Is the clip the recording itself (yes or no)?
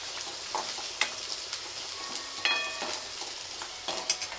yes